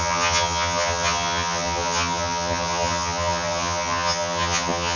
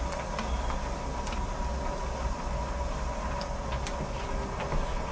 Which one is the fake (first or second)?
first